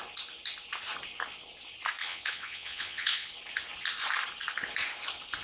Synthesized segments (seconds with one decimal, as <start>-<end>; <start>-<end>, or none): 2.0-3.3